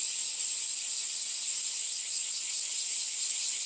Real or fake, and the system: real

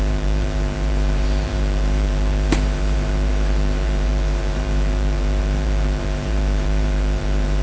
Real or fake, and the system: fake, vocoder, BigVGAN v2